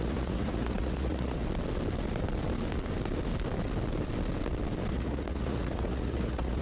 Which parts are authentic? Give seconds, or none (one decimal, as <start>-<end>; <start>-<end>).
1.4-4.9